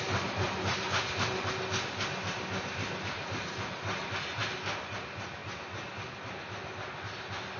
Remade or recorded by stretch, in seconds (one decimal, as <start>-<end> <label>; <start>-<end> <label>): 0.0-7.6 recorded